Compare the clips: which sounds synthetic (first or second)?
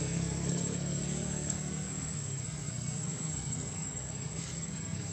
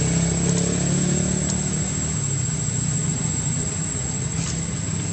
first